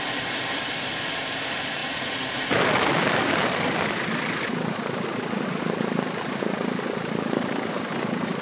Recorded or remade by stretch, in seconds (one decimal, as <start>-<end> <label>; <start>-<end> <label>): 0.0-8.4 recorded